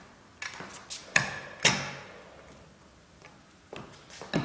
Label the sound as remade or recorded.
recorded